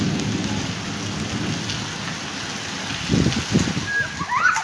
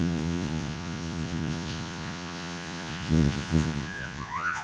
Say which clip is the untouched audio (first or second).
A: first